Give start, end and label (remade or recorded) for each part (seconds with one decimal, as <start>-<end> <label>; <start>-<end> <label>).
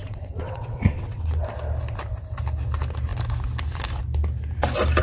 0.0-1.4 remade; 1.4-5.0 recorded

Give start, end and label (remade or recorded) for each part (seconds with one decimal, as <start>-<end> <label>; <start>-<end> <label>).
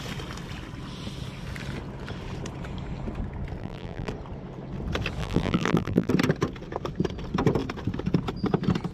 0.0-3.6 recorded; 3.6-4.1 remade; 4.1-5.2 recorded; 5.2-6.1 remade; 6.1-8.9 recorded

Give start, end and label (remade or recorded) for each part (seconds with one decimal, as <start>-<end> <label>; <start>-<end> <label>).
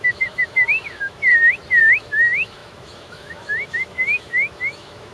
0.0-1.3 remade; 1.3-1.8 recorded; 1.8-5.1 remade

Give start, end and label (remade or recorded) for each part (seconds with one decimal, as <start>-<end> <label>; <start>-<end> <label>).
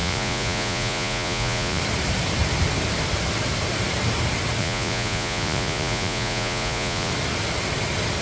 0.0-1.8 remade; 1.8-4.6 recorded; 4.6-7.1 remade; 7.1-8.2 recorded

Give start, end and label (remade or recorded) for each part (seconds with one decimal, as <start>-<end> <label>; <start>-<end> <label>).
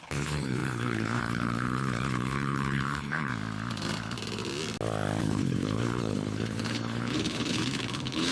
0.0-3.3 remade; 3.3-5.2 recorded; 5.2-8.3 remade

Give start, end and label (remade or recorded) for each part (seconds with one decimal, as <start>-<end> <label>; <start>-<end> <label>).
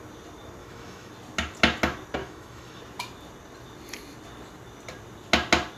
0.0-0.6 recorded; 0.6-1.1 remade; 1.1-2.2 recorded; 2.2-2.8 remade; 2.8-5.8 recorded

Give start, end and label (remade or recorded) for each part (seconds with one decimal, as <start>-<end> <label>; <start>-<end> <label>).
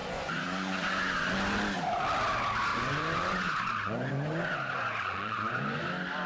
0.0-1.3 remade; 1.3-2.7 recorded; 2.7-5.8 remade; 5.8-6.3 recorded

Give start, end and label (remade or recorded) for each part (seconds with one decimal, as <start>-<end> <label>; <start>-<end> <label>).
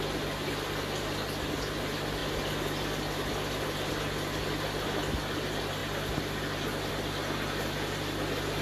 0.0-8.6 recorded